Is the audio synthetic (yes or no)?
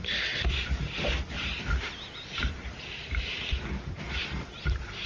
no